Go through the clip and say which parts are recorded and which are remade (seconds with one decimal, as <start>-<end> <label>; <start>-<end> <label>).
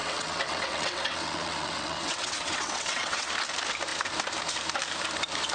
0.0-3.3 remade; 3.3-5.5 recorded